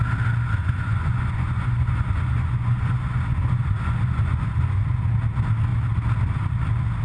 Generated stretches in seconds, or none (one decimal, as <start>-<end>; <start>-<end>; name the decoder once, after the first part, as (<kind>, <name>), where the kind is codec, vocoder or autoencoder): 0.6-4.8 (vocoder, Vocos)